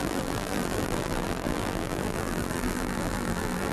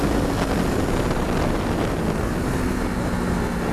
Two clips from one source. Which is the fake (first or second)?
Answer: first